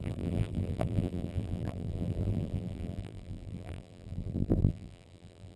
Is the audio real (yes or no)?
no